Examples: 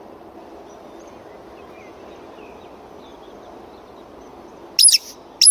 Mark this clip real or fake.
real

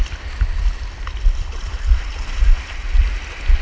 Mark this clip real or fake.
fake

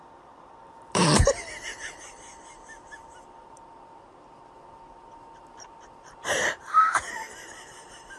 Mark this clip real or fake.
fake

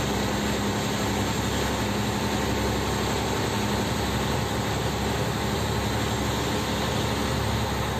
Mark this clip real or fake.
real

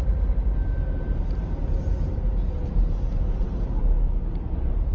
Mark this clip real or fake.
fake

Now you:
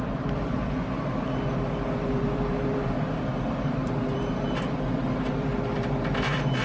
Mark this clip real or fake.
fake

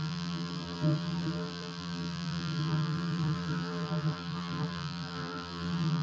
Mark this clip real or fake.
fake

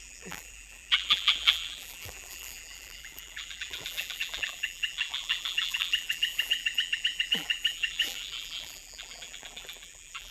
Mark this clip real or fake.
fake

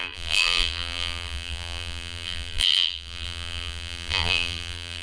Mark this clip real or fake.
fake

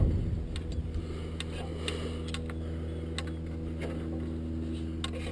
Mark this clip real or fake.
real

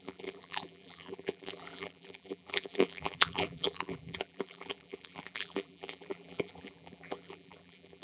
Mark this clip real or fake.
fake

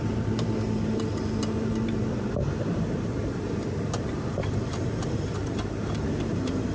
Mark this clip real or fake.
fake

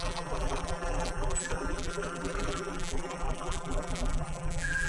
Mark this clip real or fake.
fake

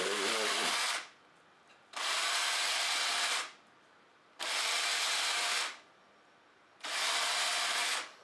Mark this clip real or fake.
real